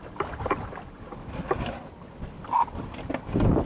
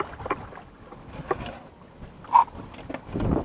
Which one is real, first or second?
second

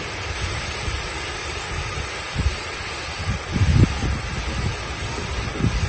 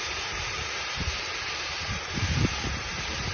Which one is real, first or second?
first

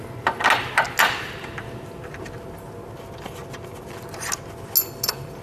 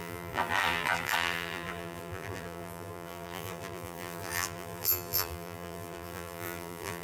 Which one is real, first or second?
first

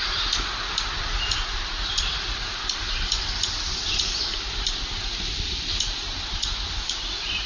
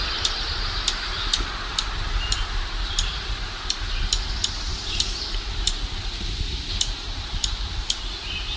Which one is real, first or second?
second